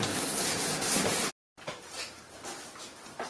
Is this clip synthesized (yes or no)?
no